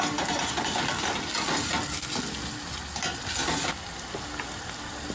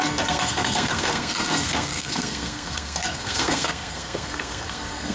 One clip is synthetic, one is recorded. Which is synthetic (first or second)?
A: second